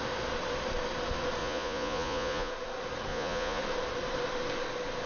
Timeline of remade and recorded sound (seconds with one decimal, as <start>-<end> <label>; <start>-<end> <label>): 0.0-1.4 recorded; 1.4-2.5 remade; 2.5-3.1 recorded; 3.1-3.6 remade; 3.6-5.1 recorded